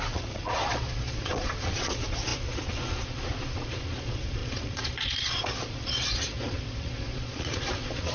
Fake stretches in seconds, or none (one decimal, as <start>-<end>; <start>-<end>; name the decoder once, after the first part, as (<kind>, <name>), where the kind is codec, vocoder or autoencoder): 0.0-8.1 (vocoder, Vocos)